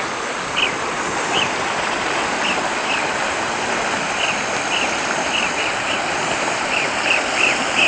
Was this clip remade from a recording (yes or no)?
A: no